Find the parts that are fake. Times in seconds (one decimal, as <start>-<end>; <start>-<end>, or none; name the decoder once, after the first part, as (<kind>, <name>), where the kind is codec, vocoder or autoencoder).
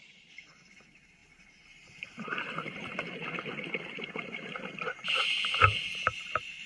none